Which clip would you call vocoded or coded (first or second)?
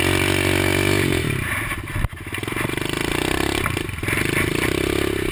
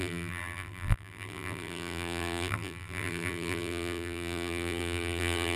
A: second